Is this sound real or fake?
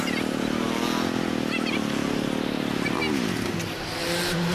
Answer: real